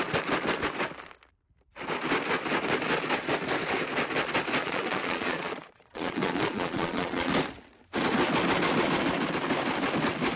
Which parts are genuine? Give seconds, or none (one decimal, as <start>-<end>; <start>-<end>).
0.0-4.6; 7.3-10.4